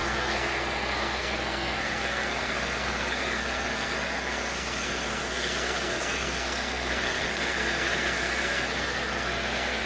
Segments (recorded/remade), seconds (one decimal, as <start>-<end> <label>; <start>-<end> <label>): 0.0-9.9 remade